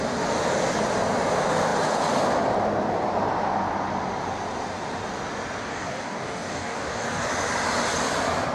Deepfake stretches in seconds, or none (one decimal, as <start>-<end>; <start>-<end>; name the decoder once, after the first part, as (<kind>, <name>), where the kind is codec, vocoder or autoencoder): 5.6-7.3 (codec, DAC)